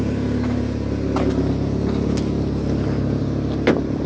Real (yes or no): yes